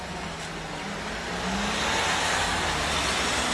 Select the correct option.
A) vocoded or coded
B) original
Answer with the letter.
B